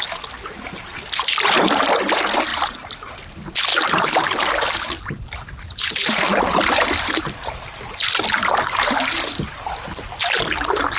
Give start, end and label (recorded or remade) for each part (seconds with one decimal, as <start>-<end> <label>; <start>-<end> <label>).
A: 0.0-11.0 recorded